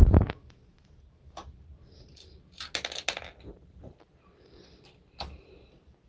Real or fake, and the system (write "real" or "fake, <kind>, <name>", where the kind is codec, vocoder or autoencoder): real